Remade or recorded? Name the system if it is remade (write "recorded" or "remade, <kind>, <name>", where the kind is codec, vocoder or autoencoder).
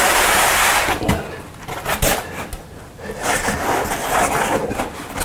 recorded